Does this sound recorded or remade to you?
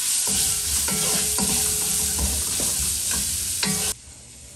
recorded